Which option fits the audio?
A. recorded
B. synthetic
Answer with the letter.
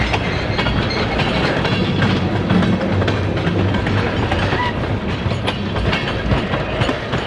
A